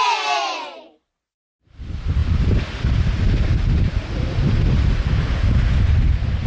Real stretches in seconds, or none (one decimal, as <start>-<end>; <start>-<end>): 0.0-2.2; 5.0-6.5